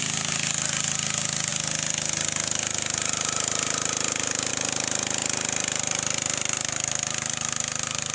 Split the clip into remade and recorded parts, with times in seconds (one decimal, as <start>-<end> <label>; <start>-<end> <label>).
0.0-8.1 recorded